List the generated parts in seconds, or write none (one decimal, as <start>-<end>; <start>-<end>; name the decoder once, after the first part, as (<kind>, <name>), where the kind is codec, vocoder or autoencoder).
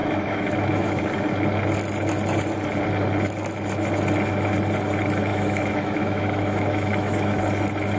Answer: 0.0-1.0 (autoencoder, DAC-VAE); 5.3-7.4